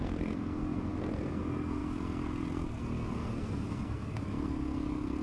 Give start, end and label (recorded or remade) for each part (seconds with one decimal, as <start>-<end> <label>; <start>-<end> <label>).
0.0-5.2 remade